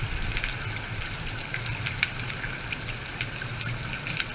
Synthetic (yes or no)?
no